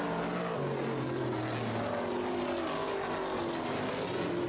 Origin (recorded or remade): recorded